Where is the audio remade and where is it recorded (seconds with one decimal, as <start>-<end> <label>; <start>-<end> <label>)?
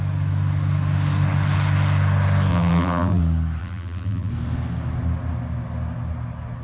0.0-2.5 recorded; 2.5-3.2 remade; 3.2-3.6 recorded; 3.6-4.3 remade; 4.3-6.6 recorded